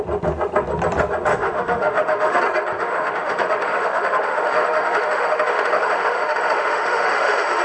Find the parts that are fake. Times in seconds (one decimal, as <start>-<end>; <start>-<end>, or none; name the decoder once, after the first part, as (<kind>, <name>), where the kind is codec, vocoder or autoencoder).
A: 1.3-2.4 (autoencoder, DAC-VAE); 2.8-7.6